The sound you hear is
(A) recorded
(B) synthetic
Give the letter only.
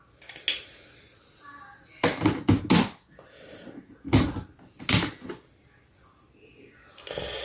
A